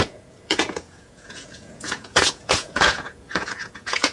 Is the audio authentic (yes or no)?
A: no